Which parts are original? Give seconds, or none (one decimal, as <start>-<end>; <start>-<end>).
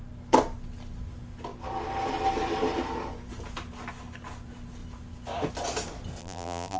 0.0-6.2